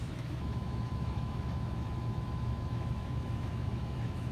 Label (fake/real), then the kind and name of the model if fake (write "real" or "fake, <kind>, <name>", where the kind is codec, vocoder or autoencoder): fake, autoencoder, DAC-VAE